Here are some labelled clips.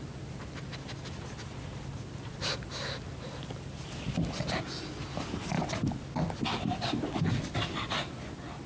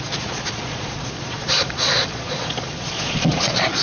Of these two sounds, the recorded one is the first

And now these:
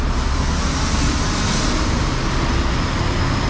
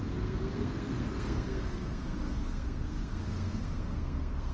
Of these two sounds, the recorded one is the first